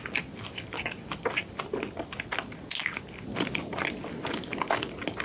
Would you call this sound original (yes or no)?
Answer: yes